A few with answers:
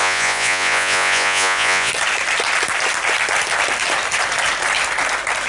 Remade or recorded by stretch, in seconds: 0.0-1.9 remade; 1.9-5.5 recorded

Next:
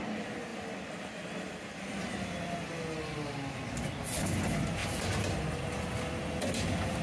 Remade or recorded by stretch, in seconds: 0.0-4.8 recorded; 4.8-5.4 remade; 5.4-7.0 recorded

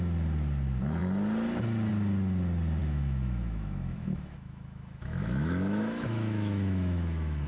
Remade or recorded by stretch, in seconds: 0.0-2.8 recorded; 2.8-7.5 remade

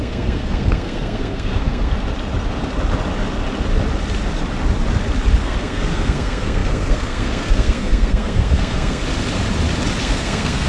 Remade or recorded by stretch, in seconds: 0.0-1.9 remade; 1.9-5.4 recorded; 5.4-9.0 remade; 9.0-10.0 recorded; 10.0-10.7 remade

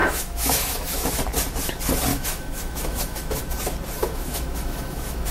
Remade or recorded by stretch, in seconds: 0.0-1.2 remade; 1.2-2.1 recorded; 2.1-3.4 remade; 3.4-4.0 recorded; 4.0-5.3 remade

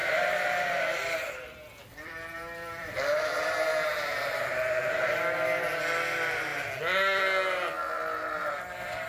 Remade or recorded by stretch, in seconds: 0.0-5.0 remade; 5.0-9.1 recorded